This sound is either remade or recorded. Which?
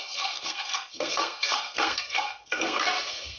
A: remade